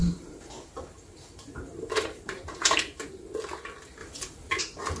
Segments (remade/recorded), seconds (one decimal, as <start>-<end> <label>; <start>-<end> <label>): 0.0-3.0 remade; 3.0-4.0 recorded; 4.0-4.6 remade; 4.6-5.0 recorded